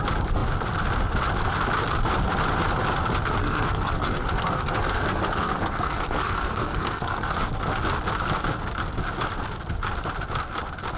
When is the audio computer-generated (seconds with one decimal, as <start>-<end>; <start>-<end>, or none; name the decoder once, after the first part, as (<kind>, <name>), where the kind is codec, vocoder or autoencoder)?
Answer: 3.4-7.4 (codec, SNAC)